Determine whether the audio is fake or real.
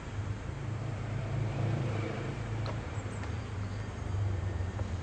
fake